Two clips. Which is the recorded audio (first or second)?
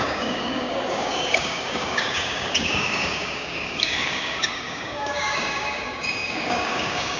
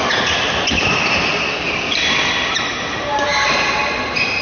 second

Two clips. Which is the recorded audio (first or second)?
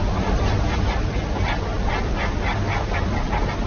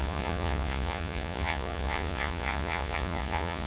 first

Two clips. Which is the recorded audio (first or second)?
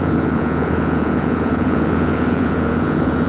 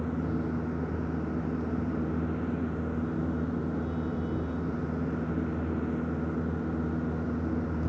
second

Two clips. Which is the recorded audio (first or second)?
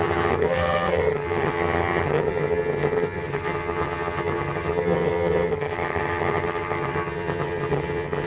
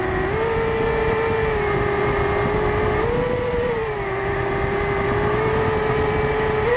second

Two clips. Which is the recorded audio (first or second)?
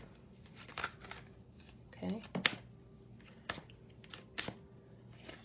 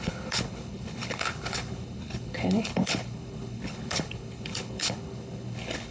first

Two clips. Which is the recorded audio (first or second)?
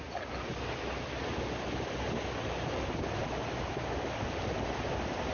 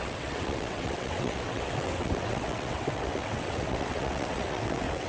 first